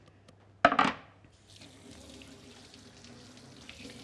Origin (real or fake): real